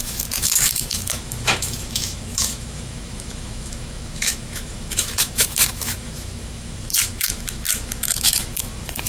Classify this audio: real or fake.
fake